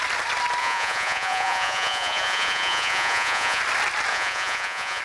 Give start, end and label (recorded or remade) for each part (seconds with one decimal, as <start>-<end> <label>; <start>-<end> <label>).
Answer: 0.0-0.6 recorded; 0.6-3.6 remade; 3.6-4.1 recorded; 4.1-5.0 remade